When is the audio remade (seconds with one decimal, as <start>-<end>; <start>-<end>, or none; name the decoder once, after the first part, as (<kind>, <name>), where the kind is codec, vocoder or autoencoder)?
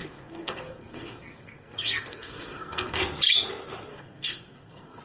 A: 0.0-3.0 (codec, SNAC); 3.9-5.0